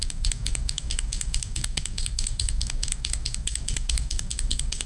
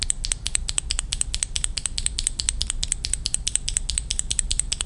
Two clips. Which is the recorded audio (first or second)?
second